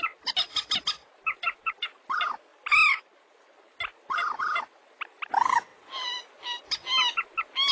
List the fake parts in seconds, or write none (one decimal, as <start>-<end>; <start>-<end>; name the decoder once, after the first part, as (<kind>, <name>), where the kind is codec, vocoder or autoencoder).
none